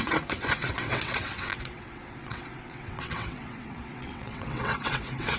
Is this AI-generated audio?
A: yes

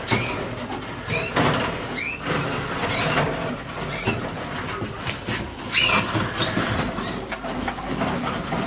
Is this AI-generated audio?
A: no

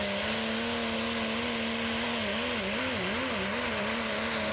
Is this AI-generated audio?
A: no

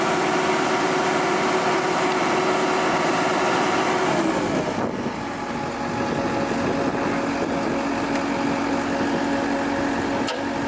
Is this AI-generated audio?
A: no